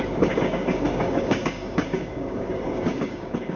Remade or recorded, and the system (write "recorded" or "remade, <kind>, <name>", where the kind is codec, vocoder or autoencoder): remade, codec, DAC